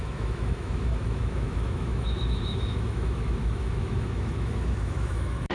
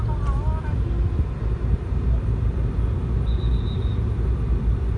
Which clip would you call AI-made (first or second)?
first